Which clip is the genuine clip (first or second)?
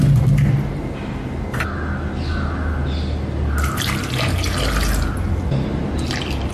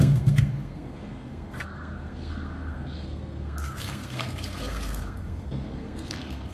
first